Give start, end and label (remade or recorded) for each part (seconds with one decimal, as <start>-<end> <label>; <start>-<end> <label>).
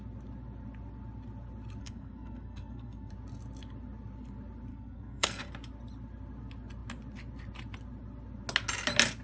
0.0-1.8 recorded; 1.8-3.1 remade; 3.1-4.7 recorded; 4.7-5.5 remade; 5.5-9.2 recorded